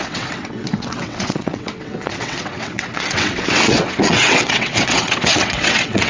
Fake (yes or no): yes